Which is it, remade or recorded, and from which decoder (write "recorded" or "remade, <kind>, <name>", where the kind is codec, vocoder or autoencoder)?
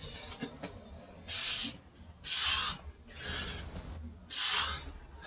recorded